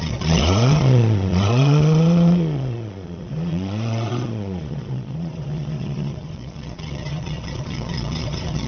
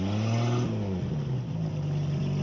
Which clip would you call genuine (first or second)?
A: second